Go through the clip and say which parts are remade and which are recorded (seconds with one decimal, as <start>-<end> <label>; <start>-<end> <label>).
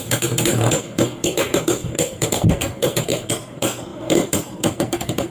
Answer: 0.0-5.3 remade